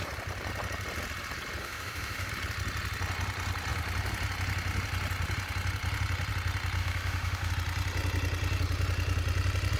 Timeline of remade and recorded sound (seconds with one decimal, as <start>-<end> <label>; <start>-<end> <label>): 0.0-1.6 recorded; 1.6-2.3 remade; 2.3-6.8 recorded; 6.8-7.5 remade; 7.5-9.8 recorded